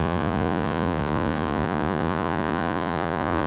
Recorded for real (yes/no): no